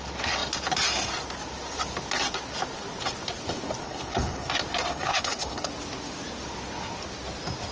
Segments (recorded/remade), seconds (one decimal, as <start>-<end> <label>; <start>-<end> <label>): 0.0-3.8 recorded; 3.8-4.5 remade; 4.5-4.9 recorded; 4.9-5.7 remade; 5.7-7.7 recorded